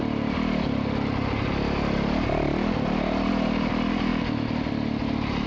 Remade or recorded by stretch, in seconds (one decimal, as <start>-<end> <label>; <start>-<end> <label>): 0.0-5.5 recorded